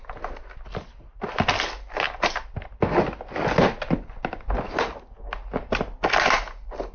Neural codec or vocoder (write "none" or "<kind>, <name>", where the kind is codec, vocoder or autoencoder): none